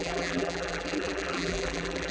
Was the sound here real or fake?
fake